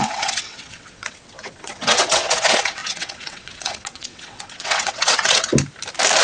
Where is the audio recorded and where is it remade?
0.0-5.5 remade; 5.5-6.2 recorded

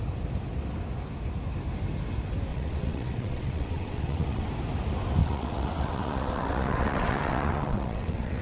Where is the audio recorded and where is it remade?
0.0-2.5 recorded; 2.5-4.5 remade; 4.5-5.2 recorded; 5.2-8.4 remade

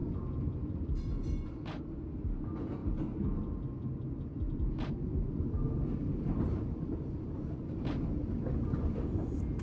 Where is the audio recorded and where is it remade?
0.0-9.6 recorded

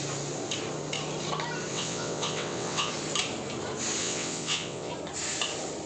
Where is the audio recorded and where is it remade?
0.0-1.7 recorded; 1.7-2.9 remade; 2.9-4.0 recorded; 4.0-4.9 remade; 4.9-5.9 recorded

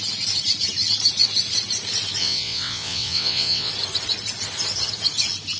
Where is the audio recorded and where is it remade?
0.0-2.2 recorded; 2.2-3.7 remade; 3.7-5.6 recorded

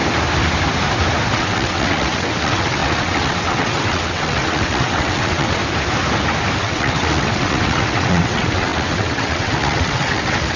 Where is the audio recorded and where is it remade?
0.0-1.3 recorded; 1.3-5.6 remade; 5.6-6.6 recorded; 6.6-10.6 remade

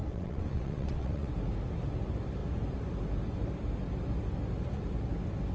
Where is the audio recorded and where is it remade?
0.0-1.3 remade; 1.3-5.5 recorded

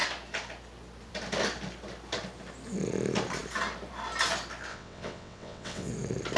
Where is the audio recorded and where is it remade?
0.0-4.7 recorded; 4.7-5.9 remade; 5.9-6.4 recorded